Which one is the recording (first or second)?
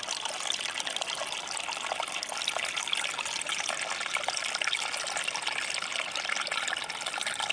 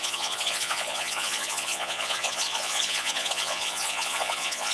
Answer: first